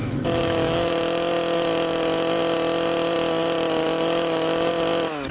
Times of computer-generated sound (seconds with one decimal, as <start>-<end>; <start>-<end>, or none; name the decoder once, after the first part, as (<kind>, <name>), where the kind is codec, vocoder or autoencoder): 0.0-0.9 (autoencoder, DAC-VAE); 3.8-4.7